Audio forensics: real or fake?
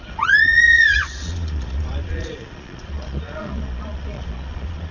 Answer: fake